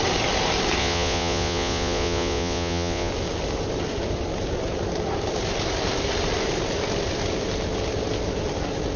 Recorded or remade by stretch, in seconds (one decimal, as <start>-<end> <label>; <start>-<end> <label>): 0.0-0.8 recorded; 0.8-3.1 remade; 3.1-9.0 recorded